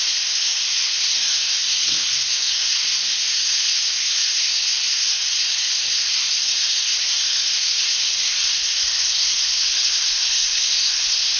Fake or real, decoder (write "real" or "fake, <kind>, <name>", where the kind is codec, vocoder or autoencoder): fake, codec, SNAC